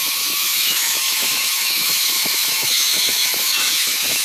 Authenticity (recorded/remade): remade